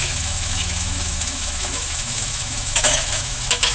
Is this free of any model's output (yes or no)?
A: no